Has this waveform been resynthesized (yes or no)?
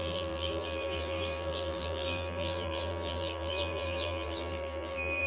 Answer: yes